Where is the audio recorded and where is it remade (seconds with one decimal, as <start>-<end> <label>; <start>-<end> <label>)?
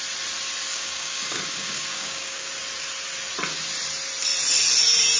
0.0-0.7 recorded; 0.7-2.5 remade; 2.5-5.2 recorded